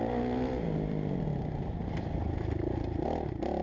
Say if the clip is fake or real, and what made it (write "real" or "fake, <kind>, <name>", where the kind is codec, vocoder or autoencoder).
real